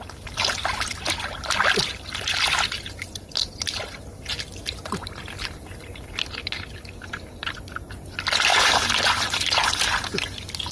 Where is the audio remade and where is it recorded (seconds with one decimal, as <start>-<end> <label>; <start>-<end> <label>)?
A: 0.0-10.7 recorded